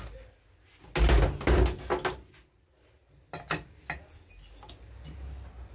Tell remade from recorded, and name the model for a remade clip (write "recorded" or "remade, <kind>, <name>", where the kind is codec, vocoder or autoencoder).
recorded